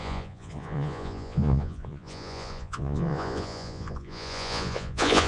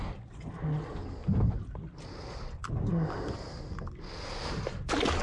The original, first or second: second